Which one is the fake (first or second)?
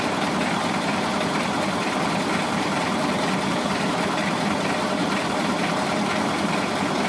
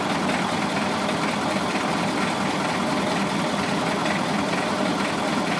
first